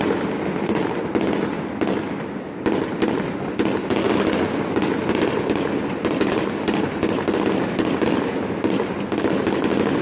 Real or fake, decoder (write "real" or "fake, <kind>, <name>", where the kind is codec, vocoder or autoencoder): real